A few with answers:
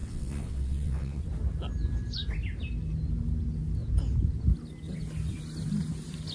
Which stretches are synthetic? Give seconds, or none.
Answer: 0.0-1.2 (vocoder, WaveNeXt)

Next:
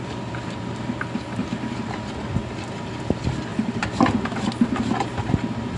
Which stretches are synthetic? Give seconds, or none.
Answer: 3.5-5.3 (vocoder, BigVGAN v2)

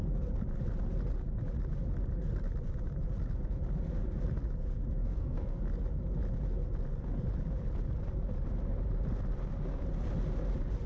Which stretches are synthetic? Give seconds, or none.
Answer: 5.0-5.6 (codec, SNAC)